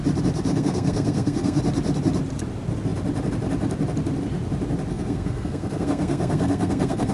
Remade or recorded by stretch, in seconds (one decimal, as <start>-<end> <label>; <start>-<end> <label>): 0.0-0.5 recorded; 0.5-1.6 remade; 1.6-4.9 recorded; 4.9-7.1 remade